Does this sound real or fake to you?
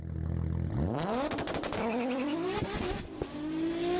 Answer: real